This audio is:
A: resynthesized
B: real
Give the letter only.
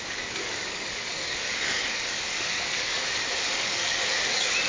A